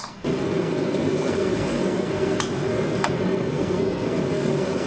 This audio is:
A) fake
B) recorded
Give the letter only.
A